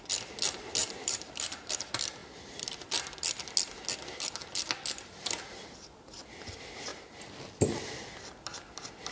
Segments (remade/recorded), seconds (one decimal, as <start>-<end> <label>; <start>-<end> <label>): 0.0-0.8 recorded; 0.8-1.7 remade; 1.7-2.2 recorded; 2.2-2.9 remade; 2.9-9.1 recorded